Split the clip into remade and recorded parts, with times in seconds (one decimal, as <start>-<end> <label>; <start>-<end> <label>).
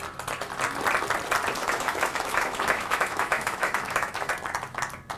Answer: 0.0-1.6 recorded; 1.6-4.3 remade; 4.3-5.2 recorded